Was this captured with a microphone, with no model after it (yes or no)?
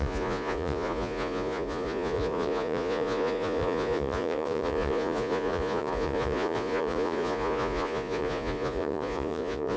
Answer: no